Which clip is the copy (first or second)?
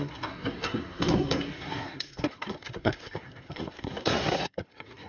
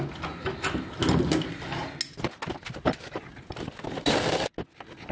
first